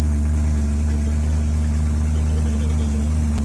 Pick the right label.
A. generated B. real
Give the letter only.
B